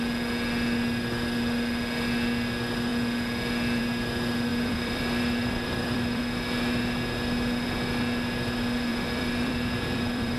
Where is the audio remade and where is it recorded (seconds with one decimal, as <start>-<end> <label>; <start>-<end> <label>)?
0.0-4.5 recorded; 4.5-6.2 remade; 6.2-8.9 recorded; 8.9-10.4 remade